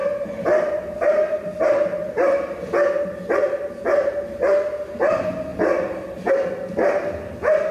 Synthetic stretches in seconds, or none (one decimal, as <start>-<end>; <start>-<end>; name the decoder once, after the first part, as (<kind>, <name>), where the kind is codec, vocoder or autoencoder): 0.0-1.6 (vocoder, BigVGAN v2); 5.5-6.3